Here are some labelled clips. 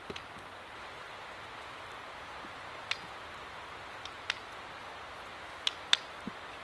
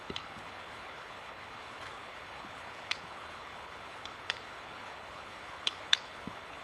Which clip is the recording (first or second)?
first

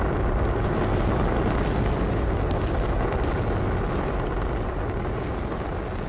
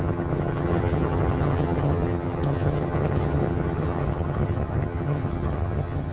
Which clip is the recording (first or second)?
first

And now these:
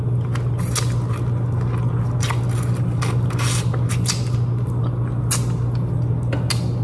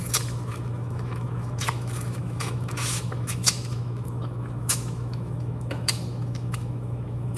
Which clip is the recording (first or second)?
first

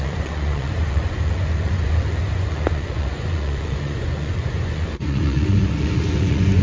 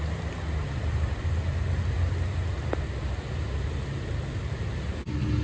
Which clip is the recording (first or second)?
second